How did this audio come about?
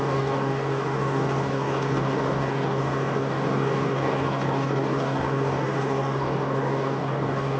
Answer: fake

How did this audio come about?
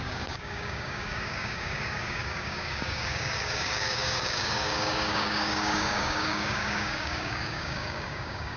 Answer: fake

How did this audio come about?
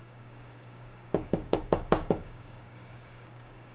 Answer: fake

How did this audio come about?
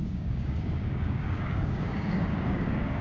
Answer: fake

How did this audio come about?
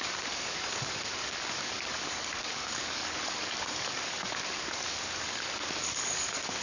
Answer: fake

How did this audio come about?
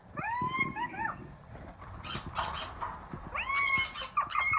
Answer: real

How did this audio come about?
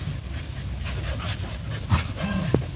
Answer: real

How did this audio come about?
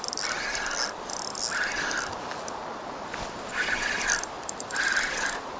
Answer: real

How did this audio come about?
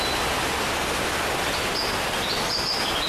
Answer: real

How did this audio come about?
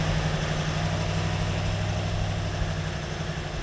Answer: real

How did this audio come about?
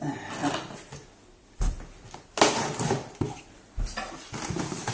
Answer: real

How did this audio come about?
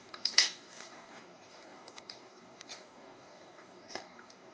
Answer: fake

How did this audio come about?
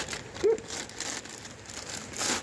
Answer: real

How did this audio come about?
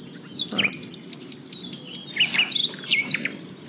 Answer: real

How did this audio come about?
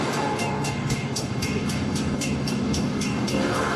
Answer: fake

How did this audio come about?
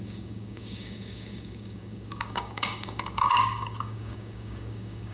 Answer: fake